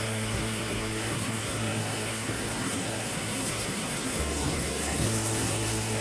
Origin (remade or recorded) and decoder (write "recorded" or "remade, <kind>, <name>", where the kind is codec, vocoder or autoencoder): remade, codec, SNAC